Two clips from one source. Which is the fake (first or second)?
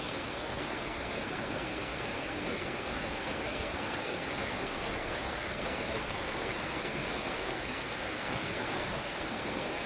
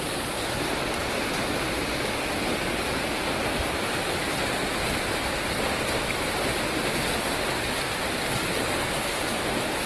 first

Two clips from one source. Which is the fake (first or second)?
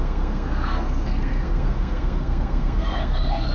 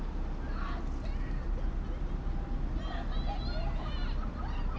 first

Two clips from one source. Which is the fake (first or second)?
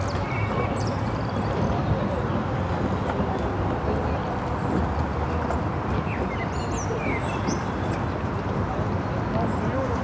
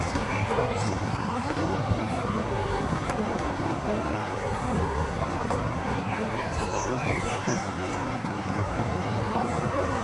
second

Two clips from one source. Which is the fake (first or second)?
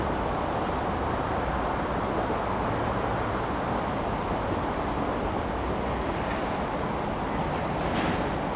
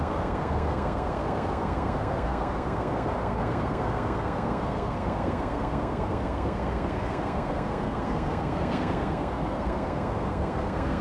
second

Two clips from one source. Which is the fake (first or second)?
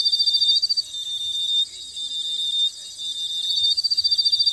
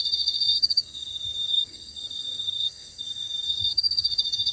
second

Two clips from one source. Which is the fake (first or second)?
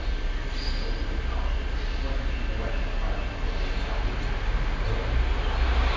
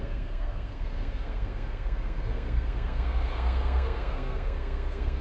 second